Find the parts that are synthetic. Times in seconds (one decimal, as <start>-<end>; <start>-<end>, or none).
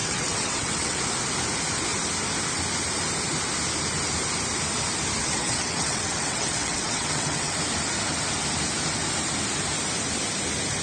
0.0-1.0; 5.2-7.5